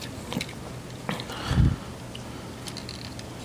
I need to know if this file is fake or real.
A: real